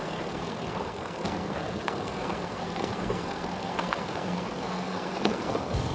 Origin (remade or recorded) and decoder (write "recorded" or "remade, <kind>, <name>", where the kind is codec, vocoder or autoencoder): remade, codec, SNAC